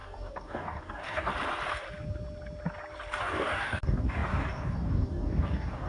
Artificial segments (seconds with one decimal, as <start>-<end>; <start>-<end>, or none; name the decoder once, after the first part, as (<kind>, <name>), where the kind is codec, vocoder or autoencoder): 0.0-1.3 (codec, DAC); 3.2-5.9